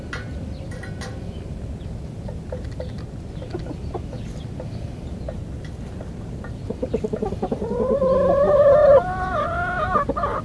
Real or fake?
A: real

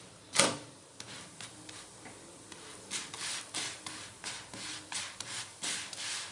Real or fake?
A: fake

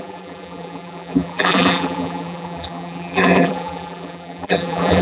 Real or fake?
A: fake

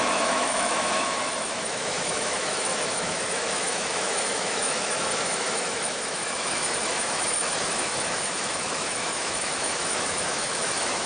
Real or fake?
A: fake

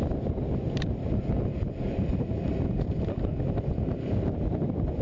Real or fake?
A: fake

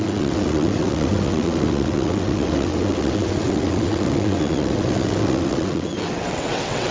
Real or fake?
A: fake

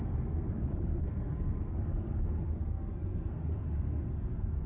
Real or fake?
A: fake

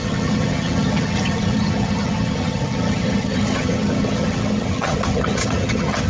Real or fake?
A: fake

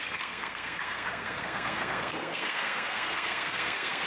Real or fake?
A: fake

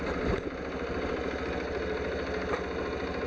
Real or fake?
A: real